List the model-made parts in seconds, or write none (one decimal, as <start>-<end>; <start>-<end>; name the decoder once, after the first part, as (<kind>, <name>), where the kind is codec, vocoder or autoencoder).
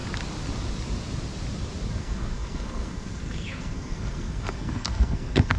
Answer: 2.0-5.6 (codec, SNAC)